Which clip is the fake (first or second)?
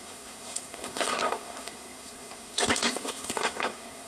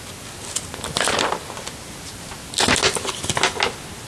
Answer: first